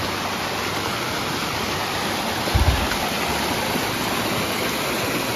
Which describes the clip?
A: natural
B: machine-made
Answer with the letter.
A